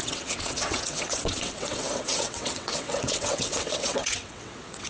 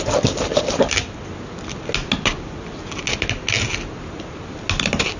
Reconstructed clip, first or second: first